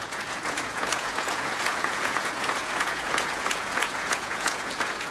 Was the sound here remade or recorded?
remade